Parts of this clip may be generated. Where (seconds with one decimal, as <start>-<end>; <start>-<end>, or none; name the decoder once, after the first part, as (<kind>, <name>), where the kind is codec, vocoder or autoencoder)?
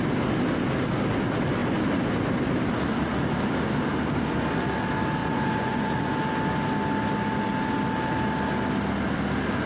5.2-6.1 (vocoder, Vocos)